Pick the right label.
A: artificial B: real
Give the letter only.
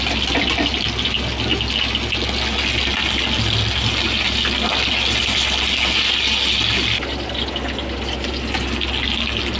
B